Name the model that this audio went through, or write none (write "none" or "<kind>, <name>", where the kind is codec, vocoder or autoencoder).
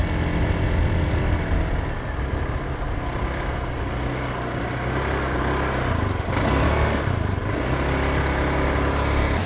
none